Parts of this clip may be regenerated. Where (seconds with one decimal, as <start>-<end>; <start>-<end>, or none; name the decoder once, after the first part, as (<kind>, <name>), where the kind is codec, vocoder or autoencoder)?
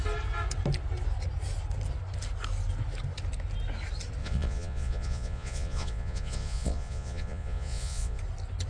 4.2-8.2 (vocoder, Vocos)